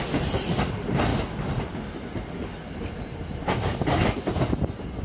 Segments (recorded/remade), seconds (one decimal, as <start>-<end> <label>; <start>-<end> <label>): 0.0-5.0 recorded